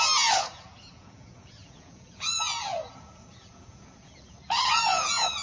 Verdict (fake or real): fake